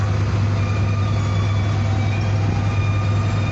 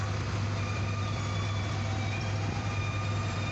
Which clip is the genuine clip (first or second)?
first